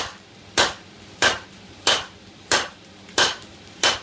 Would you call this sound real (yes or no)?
no